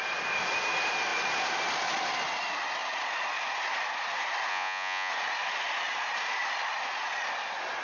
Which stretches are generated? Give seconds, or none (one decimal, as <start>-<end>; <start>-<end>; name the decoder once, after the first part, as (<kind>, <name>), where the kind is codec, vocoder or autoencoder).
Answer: 4.5-5.1 (vocoder, Vocos)